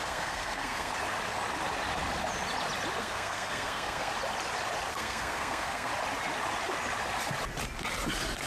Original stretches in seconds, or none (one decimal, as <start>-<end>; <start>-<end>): 0.9-3.0; 4.1-4.9; 5.9-8.5

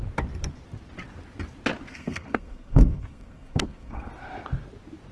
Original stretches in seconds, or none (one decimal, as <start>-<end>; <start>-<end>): 0.0-1.9; 4.1-5.1